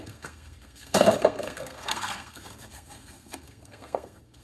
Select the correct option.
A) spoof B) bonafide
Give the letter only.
A